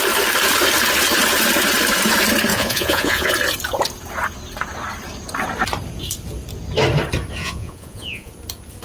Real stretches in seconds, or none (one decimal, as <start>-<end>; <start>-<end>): 0.0-2.5; 3.3-7.4; 8.3-8.8